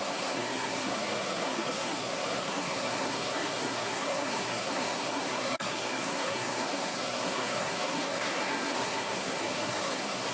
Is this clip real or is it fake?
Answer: fake